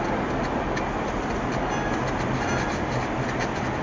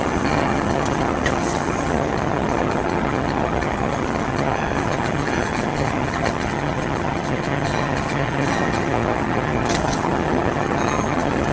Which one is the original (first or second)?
first